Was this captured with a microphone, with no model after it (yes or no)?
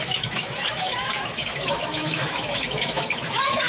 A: no